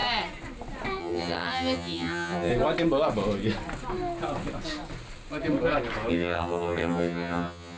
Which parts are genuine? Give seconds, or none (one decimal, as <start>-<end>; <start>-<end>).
0.0-1.0; 2.5-6.1